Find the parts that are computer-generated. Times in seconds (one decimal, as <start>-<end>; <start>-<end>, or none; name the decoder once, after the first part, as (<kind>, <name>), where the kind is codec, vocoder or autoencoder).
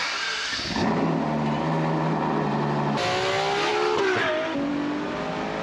none